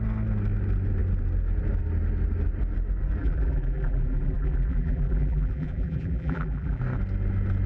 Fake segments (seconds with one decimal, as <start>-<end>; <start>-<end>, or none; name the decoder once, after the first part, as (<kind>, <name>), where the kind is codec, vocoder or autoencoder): 3.2-6.8 (vocoder, BigVGAN v2)